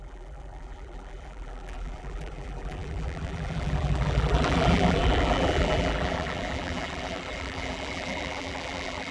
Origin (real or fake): fake